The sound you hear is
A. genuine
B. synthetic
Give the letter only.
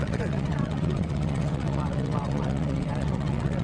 B